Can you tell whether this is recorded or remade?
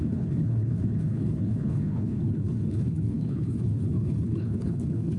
remade